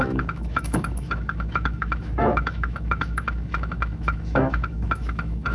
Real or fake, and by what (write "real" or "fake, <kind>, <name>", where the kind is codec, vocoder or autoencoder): fake, autoencoder, DAC-VAE